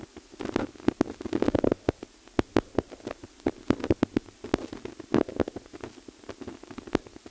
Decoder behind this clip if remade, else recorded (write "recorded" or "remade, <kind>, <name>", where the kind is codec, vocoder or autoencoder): recorded